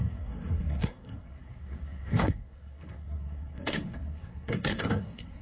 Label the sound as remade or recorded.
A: remade